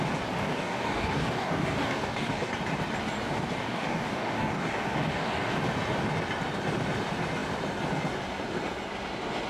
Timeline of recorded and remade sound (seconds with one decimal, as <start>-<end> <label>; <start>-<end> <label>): 0.0-0.4 recorded; 0.4-2.5 remade; 2.5-3.6 recorded; 3.6-5.6 remade; 5.6-9.5 recorded